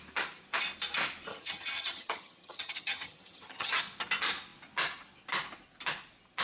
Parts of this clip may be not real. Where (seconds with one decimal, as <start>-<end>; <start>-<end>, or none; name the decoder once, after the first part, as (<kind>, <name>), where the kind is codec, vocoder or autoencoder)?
1.3-3.8 (vocoder, HiFi-GAN)